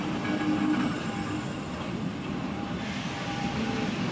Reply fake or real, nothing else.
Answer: real